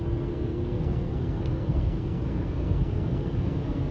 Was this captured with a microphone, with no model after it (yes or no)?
no